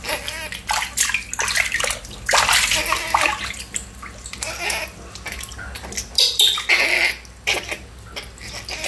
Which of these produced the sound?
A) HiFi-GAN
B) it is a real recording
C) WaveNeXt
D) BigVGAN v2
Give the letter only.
B